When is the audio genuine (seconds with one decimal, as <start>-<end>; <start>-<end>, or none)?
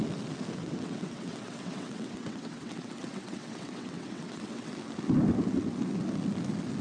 0.0-0.6; 4.7-6.8